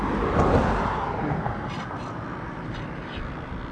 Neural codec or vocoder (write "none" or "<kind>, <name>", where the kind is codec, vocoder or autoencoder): none